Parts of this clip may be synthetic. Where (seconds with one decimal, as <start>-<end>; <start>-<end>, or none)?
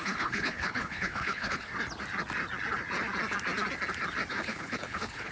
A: 0.0-1.7; 4.3-5.3